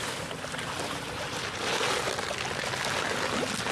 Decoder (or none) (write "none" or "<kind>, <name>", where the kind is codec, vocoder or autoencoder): none